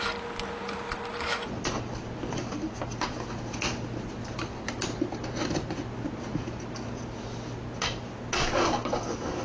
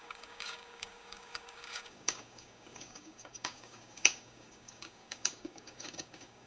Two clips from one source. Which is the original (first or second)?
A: first